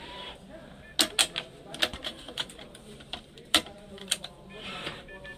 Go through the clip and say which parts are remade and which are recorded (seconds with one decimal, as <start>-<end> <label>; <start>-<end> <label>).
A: 0.0-1.9 recorded; 1.9-5.4 remade